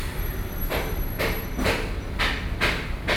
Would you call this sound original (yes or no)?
yes